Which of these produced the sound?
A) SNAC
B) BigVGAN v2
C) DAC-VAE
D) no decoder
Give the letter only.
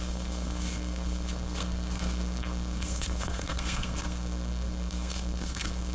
A